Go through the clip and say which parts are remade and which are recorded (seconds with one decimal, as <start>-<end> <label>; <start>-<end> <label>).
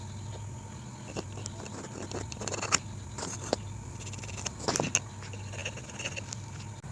0.0-6.9 recorded